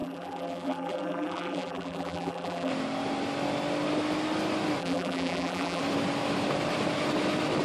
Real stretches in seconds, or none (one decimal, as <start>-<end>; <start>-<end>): 2.7-4.8; 5.8-7.6